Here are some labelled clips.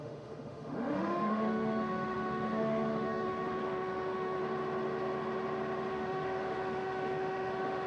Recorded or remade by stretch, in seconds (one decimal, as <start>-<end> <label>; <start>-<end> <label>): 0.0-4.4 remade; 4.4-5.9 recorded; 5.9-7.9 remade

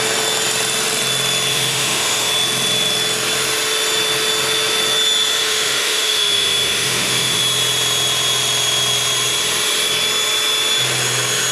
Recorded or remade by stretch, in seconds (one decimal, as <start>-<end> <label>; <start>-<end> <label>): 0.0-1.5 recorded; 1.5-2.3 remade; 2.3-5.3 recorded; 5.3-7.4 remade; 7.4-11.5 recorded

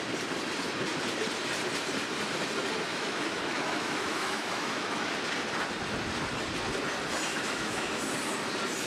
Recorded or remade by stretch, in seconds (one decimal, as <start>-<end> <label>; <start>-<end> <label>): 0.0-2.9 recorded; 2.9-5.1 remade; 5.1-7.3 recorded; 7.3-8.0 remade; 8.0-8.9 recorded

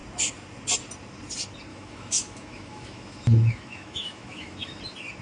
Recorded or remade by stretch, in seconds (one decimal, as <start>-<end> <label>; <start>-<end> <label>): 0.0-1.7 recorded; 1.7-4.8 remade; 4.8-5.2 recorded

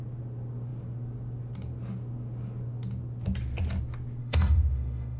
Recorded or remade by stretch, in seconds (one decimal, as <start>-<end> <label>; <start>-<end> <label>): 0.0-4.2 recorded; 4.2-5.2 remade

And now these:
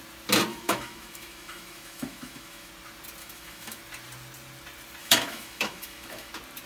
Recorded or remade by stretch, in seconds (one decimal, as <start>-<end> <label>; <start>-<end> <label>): 0.0-0.5 recorded; 0.5-2.7 remade; 2.7-3.2 recorded; 3.2-3.8 remade; 3.8-5.0 recorded; 5.0-6.3 remade; 6.3-6.7 recorded